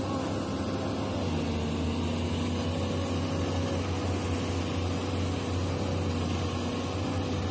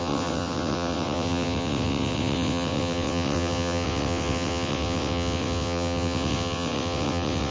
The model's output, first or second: second